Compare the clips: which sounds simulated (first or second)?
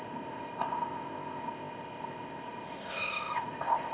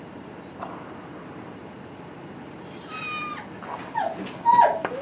first